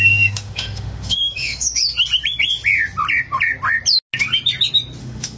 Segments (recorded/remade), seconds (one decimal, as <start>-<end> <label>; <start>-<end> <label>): 0.0-1.8 remade; 1.8-5.0 recorded; 5.0-5.4 remade